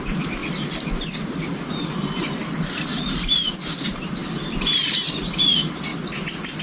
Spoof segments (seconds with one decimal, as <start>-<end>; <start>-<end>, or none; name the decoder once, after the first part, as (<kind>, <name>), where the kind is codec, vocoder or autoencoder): 4.2-5.3 (vocoder, BigVGAN v2)